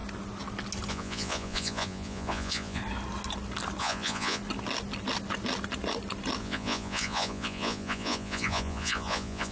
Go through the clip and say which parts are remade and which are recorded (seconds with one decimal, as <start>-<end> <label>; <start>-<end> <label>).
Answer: 0.0-0.9 recorded; 0.9-2.8 remade; 2.8-3.8 recorded; 3.8-4.4 remade; 4.4-6.4 recorded; 6.4-9.5 remade